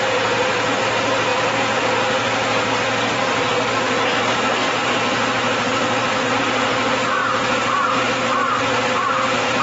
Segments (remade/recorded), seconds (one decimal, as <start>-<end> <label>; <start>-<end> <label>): 0.0-9.6 recorded